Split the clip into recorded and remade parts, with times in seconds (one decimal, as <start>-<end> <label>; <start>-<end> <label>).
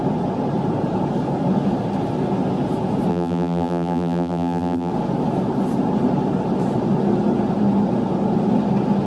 0.0-3.1 recorded; 3.1-4.9 remade; 4.9-9.1 recorded